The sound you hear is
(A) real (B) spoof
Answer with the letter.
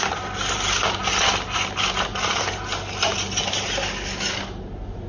A